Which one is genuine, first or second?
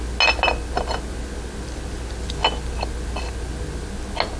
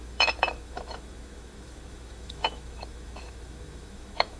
first